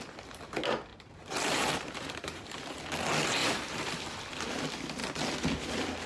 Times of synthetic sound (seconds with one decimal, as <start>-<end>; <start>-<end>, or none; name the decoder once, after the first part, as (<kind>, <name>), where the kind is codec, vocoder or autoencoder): 0.9-2.8 (vocoder, BigVGAN v2); 3.4-4.2